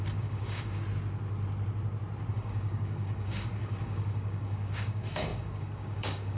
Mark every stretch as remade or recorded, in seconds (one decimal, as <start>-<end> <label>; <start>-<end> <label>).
0.0-0.8 remade; 0.8-2.3 recorded; 2.3-6.4 remade